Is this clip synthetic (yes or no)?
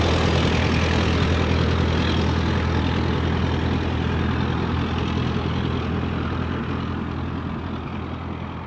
no